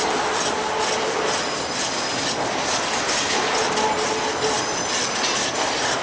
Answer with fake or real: real